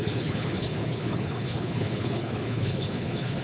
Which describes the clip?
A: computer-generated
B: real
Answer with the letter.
A